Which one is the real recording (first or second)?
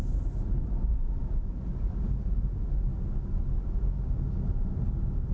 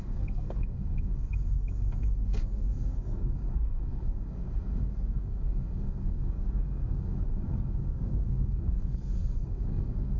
first